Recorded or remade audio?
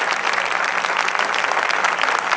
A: recorded